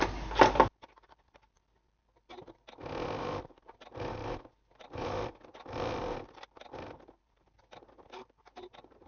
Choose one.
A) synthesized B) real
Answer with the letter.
B